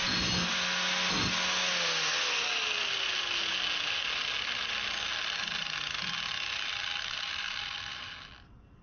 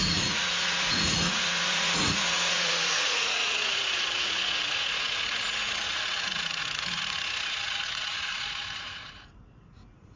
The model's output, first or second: second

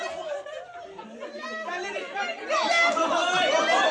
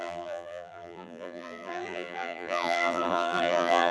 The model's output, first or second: second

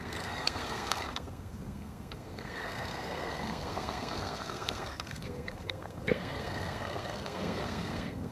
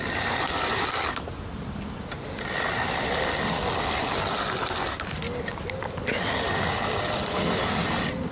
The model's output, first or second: first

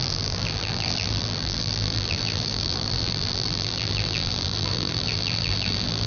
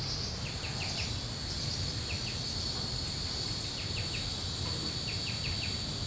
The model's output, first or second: first